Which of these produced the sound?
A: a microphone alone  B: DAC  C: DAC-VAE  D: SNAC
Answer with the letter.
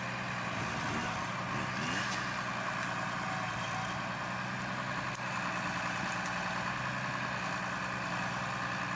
A